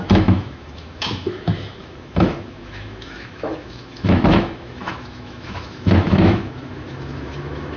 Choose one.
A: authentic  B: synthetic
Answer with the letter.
B